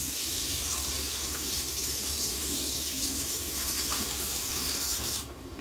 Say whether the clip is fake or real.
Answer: fake